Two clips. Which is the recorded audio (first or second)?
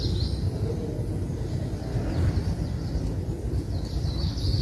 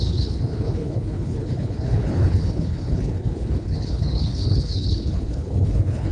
first